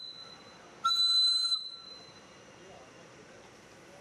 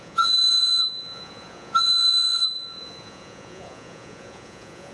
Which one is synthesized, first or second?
second